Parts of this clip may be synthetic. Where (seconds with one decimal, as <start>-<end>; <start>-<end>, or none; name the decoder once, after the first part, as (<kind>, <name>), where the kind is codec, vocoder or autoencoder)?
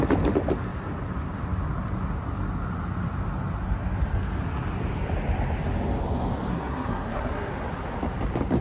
6.5-7.5 (codec, SNAC)